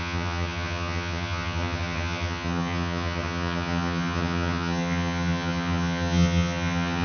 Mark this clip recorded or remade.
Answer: remade